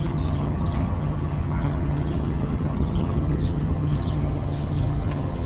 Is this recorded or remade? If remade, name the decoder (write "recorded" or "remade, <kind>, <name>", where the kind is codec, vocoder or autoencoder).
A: remade, vocoder, HiFi-GAN